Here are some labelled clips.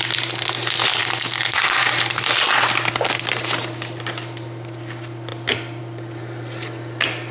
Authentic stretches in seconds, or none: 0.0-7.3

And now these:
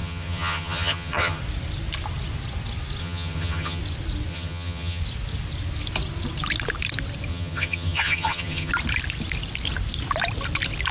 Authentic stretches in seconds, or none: 1.4-3.0; 3.8-4.3; 5.0-7.3; 8.7-10.9

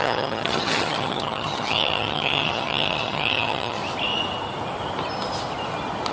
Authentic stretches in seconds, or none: 3.8-6.1